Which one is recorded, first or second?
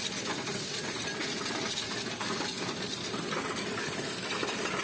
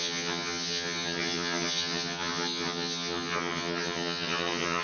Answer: first